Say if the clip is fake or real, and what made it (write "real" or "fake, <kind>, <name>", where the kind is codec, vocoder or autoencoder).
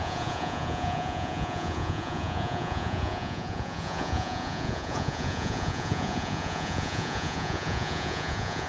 fake, vocoder, Vocos